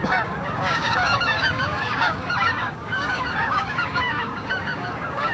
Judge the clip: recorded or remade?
remade